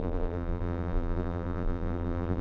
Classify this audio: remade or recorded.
remade